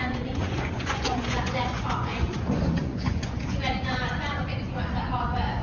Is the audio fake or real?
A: fake